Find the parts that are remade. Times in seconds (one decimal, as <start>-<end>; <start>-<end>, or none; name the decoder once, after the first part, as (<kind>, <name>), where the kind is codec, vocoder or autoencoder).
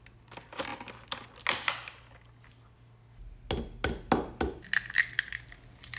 none